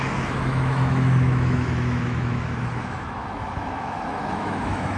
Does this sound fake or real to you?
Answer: fake